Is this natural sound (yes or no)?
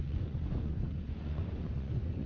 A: no